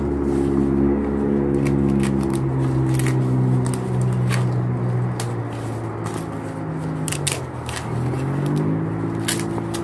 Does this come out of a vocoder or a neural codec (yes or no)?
no